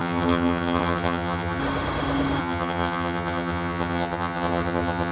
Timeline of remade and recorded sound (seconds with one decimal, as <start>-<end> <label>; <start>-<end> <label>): 0.0-1.6 remade; 1.6-2.4 recorded; 2.4-5.1 remade